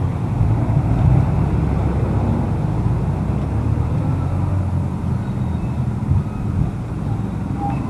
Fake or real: real